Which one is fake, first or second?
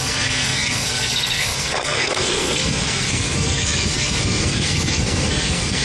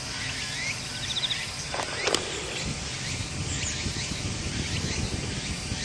first